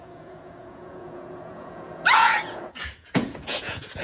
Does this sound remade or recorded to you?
remade